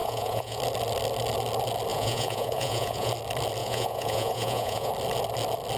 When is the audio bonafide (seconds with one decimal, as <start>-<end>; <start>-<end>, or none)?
0.6-1.9; 3.1-3.6; 4.9-5.8